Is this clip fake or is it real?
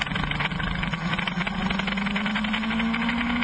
real